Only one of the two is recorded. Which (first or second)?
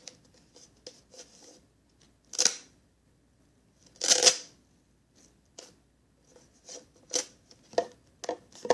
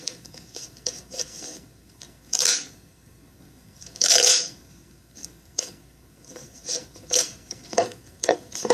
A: first